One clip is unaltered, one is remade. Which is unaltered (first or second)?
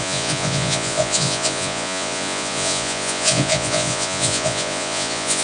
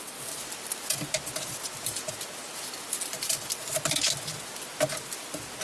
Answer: second